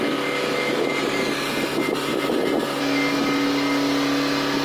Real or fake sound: real